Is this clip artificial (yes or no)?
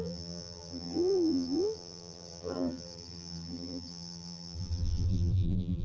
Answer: yes